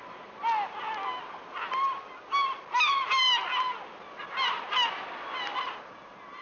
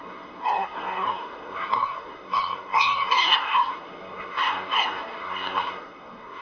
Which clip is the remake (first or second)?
second